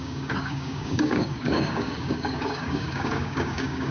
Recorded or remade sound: remade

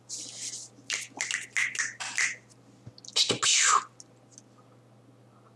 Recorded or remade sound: recorded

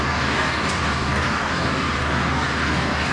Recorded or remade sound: remade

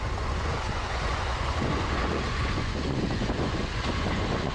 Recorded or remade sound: remade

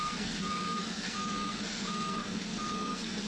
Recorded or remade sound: remade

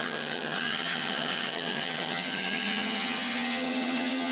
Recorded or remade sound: remade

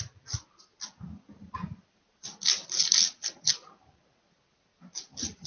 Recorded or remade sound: recorded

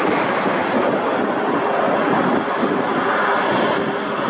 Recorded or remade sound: recorded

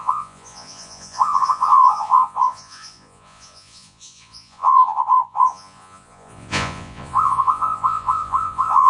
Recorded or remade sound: remade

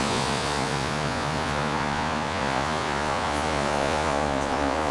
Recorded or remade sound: remade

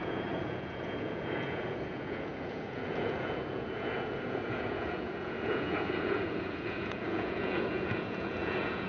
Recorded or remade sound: remade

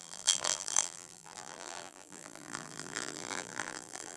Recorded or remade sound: remade